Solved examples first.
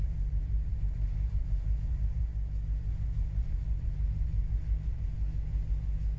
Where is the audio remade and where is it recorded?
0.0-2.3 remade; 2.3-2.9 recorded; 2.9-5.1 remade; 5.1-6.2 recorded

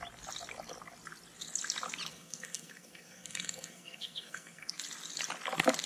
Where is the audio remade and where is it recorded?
0.0-2.1 recorded; 2.1-4.7 remade; 4.7-5.9 recorded

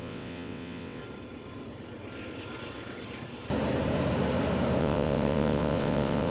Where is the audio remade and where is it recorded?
0.0-1.0 remade; 1.0-4.8 recorded; 4.8-6.3 remade